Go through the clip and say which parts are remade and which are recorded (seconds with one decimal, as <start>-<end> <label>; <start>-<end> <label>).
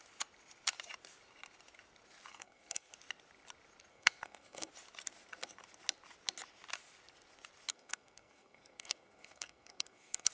0.0-2.3 recorded; 2.3-2.9 remade; 2.9-3.9 recorded; 3.9-4.7 remade; 4.7-7.7 recorded; 7.7-10.3 remade